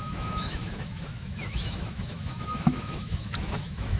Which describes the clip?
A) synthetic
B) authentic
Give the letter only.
A